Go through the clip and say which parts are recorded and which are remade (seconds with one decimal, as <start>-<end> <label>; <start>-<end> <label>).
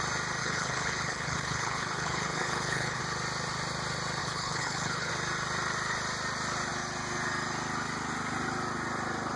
0.0-0.4 recorded; 0.4-3.0 remade; 3.0-4.2 recorded; 4.2-5.1 remade; 5.1-9.4 recorded